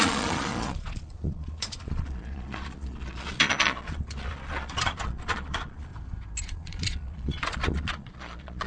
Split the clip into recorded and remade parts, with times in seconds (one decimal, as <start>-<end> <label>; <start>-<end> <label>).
0.0-5.9 remade; 5.9-6.4 recorded; 6.4-8.7 remade

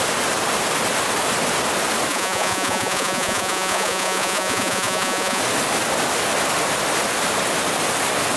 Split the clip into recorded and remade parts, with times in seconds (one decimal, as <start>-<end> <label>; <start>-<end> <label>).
0.0-2.1 recorded; 2.1-5.4 remade; 5.4-8.4 recorded

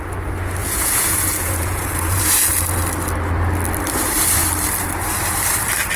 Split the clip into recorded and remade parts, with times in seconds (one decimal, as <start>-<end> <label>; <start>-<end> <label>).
0.0-0.6 recorded; 0.6-2.2 remade; 2.2-6.0 recorded

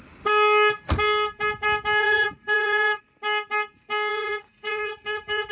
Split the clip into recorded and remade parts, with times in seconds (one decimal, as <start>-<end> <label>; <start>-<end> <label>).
0.0-2.0 recorded; 2.0-3.0 remade; 3.0-4.1 recorded; 4.1-5.5 remade

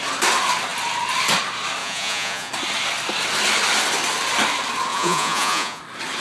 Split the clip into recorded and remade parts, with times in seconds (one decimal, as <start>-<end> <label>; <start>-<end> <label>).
0.0-1.8 recorded; 1.8-2.5 remade; 2.5-4.9 recorded; 4.9-5.8 remade; 5.8-6.2 recorded